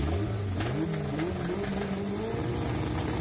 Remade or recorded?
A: recorded